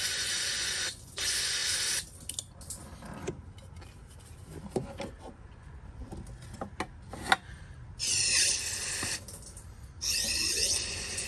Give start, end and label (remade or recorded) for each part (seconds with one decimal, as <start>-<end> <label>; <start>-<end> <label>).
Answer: 0.0-1.6 remade; 1.6-5.3 recorded; 5.3-6.1 remade; 6.1-10.7 recorded; 10.7-11.3 remade